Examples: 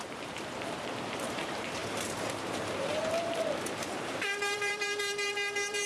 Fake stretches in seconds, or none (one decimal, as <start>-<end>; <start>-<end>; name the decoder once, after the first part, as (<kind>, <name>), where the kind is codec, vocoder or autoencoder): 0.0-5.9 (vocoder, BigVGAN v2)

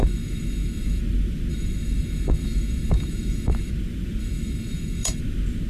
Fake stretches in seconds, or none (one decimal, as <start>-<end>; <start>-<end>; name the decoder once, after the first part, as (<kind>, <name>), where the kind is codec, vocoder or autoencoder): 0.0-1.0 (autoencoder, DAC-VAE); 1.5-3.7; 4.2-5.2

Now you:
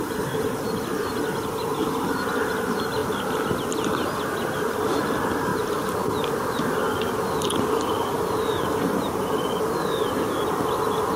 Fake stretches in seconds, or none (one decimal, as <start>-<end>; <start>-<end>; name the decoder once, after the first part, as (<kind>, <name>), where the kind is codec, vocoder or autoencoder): none